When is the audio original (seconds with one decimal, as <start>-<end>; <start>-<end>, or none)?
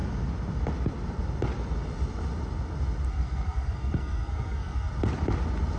0.0-3.1; 4.9-5.8